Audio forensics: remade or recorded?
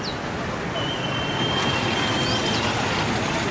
recorded